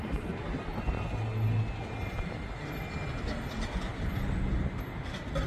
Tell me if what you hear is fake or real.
real